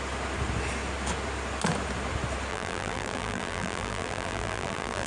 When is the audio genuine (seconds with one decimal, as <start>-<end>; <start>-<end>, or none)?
0.0-2.5